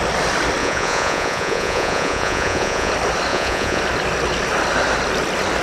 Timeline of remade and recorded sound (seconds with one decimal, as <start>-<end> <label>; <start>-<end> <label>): 0.0-0.6 recorded; 0.6-2.9 remade; 2.9-3.3 recorded; 3.3-3.8 remade; 3.8-5.6 recorded